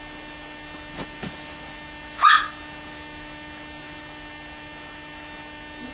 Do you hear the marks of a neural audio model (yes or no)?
no